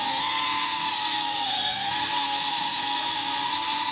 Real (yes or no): no